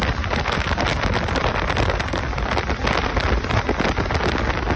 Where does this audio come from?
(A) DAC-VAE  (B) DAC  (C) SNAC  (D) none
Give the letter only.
D